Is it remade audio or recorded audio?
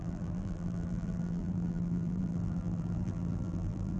remade